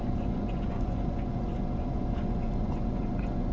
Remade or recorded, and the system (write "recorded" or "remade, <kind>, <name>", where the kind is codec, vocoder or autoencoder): remade, vocoder, Vocos